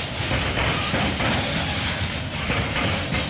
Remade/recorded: recorded